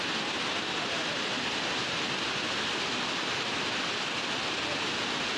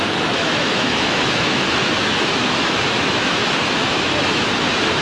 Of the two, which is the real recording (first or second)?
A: first